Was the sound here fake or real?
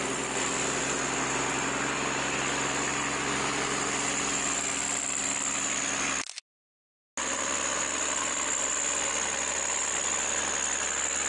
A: real